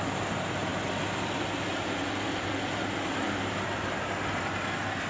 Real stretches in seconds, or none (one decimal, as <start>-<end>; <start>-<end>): 0.0-5.1